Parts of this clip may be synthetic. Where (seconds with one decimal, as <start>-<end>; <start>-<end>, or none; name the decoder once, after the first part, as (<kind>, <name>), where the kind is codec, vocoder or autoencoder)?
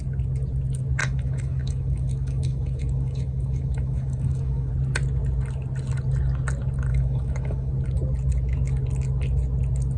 1.0-4.7 (autoencoder, DAC-VAE); 6.9-7.7